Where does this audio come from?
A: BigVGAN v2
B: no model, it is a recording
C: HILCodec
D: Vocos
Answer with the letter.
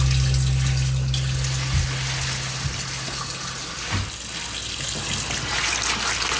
B